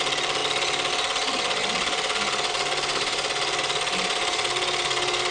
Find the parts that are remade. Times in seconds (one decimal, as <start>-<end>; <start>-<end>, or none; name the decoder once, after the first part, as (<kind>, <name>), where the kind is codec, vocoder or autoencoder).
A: 2.9-3.6 (vocoder, BigVGAN v2)